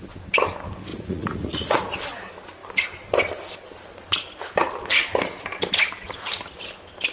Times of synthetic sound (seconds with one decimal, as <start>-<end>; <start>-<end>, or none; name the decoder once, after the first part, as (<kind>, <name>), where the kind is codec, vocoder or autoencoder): 0.9-1.8 (vocoder, Vocos)